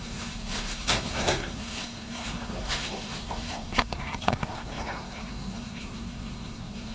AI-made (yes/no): yes